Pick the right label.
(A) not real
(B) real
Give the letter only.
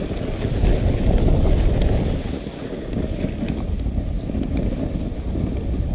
B